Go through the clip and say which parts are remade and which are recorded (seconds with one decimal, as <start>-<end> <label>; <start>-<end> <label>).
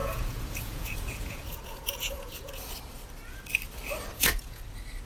0.0-2.5 remade; 2.5-4.1 recorded; 4.1-4.6 remade; 4.6-5.1 recorded